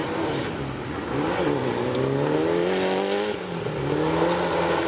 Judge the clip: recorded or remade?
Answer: recorded